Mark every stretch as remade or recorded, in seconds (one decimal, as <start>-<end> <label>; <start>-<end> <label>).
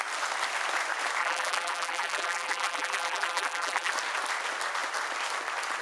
0.0-1.2 recorded; 1.2-3.9 remade; 3.9-5.8 recorded